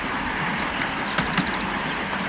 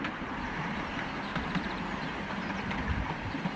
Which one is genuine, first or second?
first